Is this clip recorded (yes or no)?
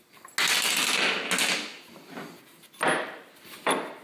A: yes